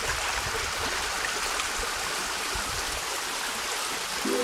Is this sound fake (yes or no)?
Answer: no